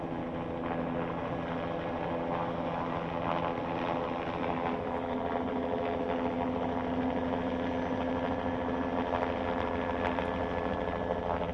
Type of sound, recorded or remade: recorded